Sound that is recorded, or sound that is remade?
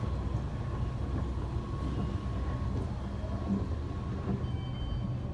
recorded